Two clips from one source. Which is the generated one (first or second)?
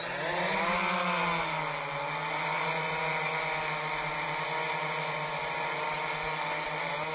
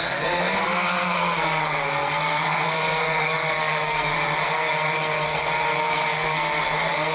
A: second